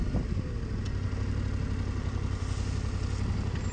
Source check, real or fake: real